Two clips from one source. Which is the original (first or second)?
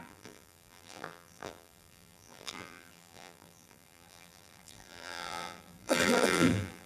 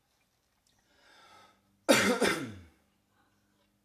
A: second